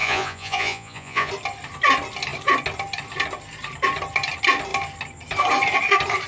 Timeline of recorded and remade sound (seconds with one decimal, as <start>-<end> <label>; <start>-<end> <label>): 0.0-1.3 remade; 1.3-6.3 recorded

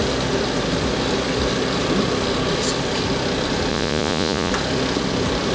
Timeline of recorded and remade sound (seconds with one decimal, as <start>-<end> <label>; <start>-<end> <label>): 0.0-3.7 recorded; 3.7-4.5 remade; 4.5-5.5 recorded

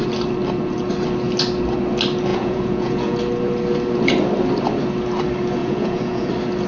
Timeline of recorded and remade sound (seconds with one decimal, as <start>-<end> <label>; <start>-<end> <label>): 0.0-2.3 recorded; 2.3-3.2 remade; 3.2-5.6 recorded; 5.6-6.3 remade; 6.3-6.7 recorded

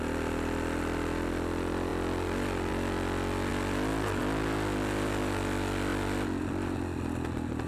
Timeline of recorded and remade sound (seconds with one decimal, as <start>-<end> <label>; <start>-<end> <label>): 0.0-7.7 recorded

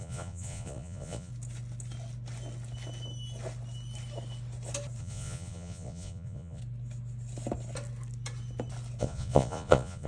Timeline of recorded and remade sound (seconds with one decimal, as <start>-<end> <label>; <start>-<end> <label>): 0.0-1.3 remade; 1.3-5.0 recorded; 5.0-6.6 remade; 6.6-9.0 recorded; 9.0-10.1 remade

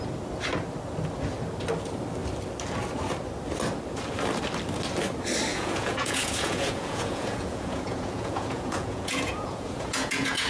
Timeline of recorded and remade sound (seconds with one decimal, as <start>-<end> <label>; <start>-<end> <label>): 0.0-5.5 recorded; 5.5-10.5 remade

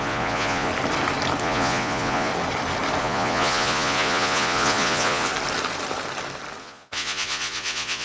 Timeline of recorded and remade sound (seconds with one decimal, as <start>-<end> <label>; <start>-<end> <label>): 0.0-0.7 remade; 0.7-1.4 recorded; 1.4-2.3 remade; 2.3-3.0 recorded; 3.0-5.3 remade; 5.3-6.6 recorded; 6.6-8.0 remade

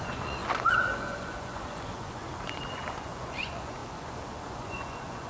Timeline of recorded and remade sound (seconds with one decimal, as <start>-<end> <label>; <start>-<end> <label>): 0.0-5.3 remade